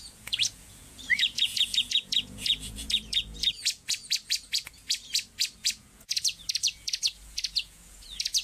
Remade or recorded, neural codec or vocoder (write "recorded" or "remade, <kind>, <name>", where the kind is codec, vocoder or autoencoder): remade, vocoder, Vocos